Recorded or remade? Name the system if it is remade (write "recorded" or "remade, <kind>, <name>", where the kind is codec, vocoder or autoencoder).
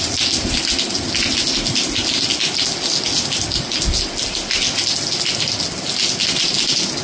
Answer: recorded